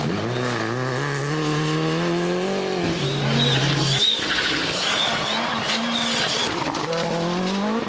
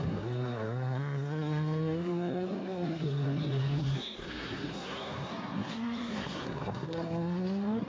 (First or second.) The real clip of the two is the first